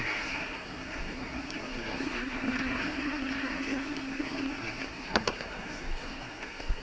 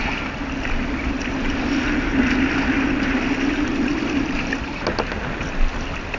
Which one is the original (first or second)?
second